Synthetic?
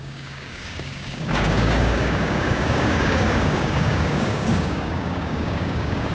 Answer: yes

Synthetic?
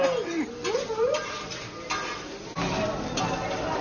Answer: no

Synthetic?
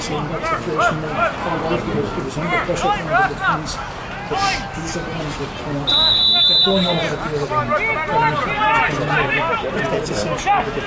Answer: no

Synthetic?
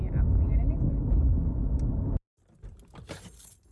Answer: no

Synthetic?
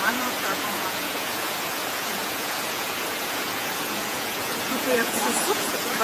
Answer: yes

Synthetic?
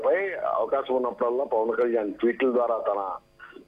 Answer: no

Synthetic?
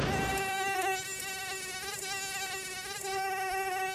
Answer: no